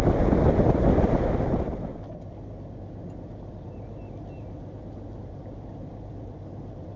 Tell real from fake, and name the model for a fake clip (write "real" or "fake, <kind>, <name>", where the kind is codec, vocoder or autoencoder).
real